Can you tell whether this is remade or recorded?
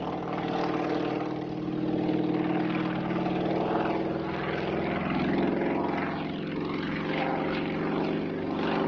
recorded